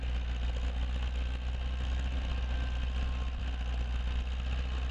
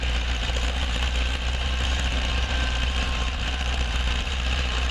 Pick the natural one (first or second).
first